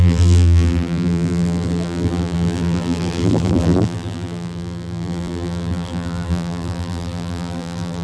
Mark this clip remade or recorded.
remade